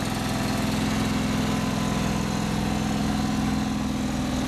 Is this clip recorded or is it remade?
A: recorded